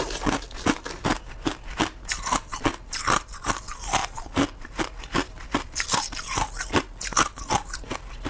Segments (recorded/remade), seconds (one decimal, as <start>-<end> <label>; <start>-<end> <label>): 0.0-8.3 recorded